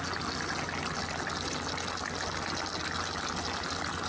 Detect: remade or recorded recorded